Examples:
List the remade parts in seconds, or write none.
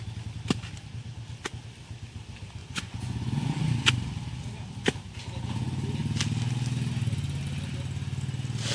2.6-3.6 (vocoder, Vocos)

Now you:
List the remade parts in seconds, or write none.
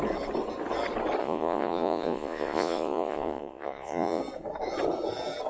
1.2-4.2 (vocoder, Vocos)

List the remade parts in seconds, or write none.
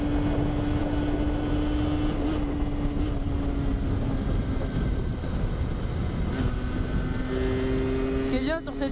none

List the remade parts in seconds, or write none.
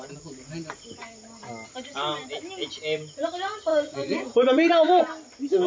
3.7-5.0 (vocoder, Vocos)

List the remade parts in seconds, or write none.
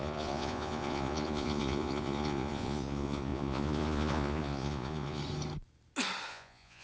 0.0-5.2 (vocoder, Vocos); 6.3-6.8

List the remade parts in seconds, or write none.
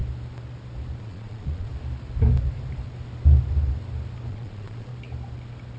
1.0-1.7 (vocoder, Vocos); 4.3-4.9